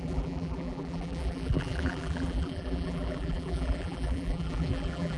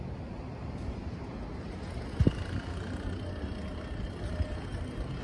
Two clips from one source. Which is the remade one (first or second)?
first